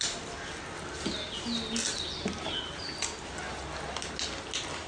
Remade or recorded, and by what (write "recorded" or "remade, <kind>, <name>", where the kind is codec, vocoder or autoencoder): recorded